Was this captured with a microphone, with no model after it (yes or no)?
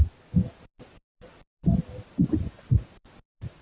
yes